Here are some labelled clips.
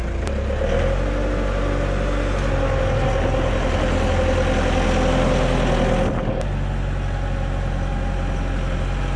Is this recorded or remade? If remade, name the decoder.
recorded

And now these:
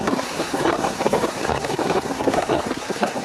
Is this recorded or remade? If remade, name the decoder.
remade, codec, SNAC